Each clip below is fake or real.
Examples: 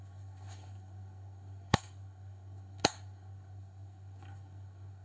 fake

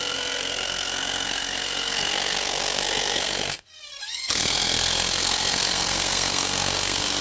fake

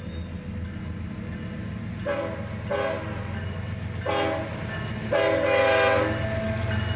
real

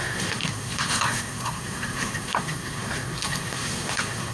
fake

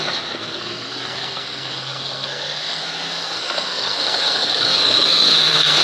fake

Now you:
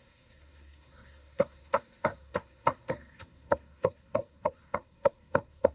fake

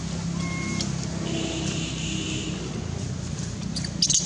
real